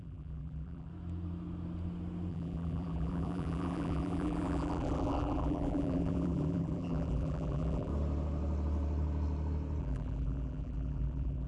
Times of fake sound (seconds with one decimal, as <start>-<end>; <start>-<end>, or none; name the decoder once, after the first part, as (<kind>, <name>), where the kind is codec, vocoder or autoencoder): 0.0-0.9 (vocoder, BigVGAN v2); 2.3-7.9; 9.8-11.5